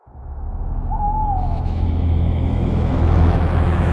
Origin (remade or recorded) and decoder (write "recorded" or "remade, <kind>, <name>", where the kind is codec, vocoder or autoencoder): remade, autoencoder, DAC-VAE